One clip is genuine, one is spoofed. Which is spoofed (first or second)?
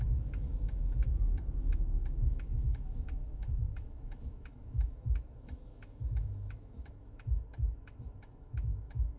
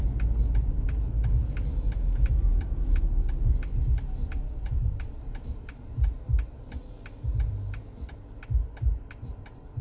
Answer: first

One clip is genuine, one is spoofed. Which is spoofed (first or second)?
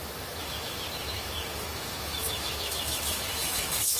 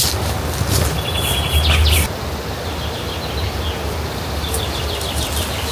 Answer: first